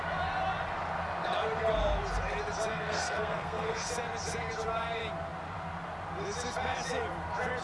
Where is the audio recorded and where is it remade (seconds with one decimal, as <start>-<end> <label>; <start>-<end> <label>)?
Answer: 0.0-2.7 recorded; 2.7-3.9 remade; 3.9-7.6 recorded